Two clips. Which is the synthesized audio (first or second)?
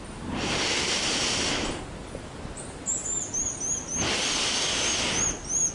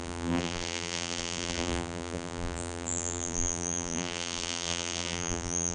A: second